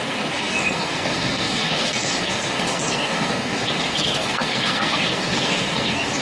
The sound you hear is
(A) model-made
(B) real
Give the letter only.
A